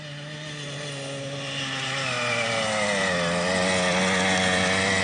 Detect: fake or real real